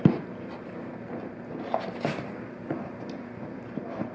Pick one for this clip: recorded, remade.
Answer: recorded